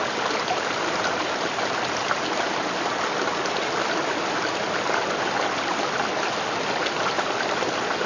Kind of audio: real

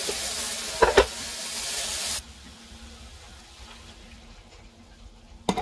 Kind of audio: real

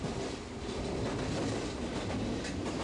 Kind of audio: real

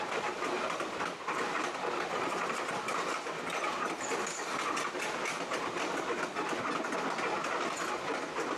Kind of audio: real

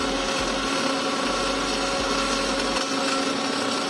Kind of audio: real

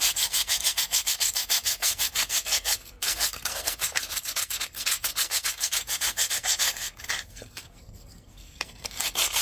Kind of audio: fake